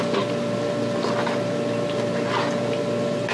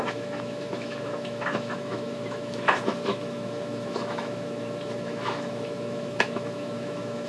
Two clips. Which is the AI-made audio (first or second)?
second